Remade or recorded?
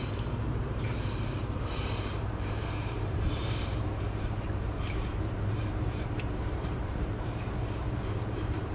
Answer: remade